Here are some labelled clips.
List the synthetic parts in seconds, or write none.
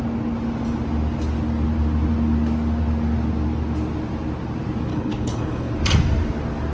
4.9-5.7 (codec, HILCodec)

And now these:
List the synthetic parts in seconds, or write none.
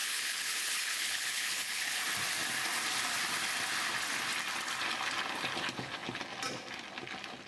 0.0-2.0 (codec, HILCodec)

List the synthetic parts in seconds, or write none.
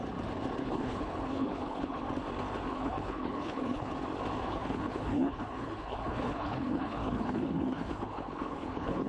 0.6-2.0 (codec, HILCodec); 2.7-3.9; 4.4-9.1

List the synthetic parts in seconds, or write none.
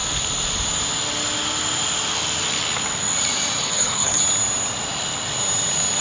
3.6-4.2 (codec, HILCodec)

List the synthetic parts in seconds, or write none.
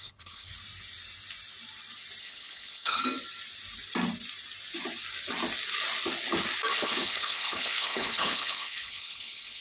0.0-0.5 (codec, HILCodec); 2.2-3.0; 6.7-9.6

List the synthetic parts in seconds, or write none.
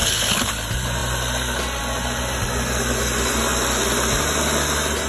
0.0-0.5 (codec, HILCodec)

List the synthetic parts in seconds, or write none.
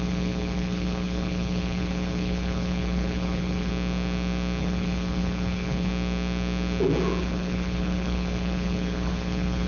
0.0-3.7 (codec, HILCodec); 4.6-5.9; 7.2-9.7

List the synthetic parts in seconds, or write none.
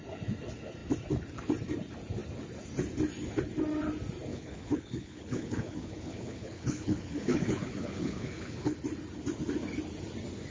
4.3-8.7 (codec, HILCodec)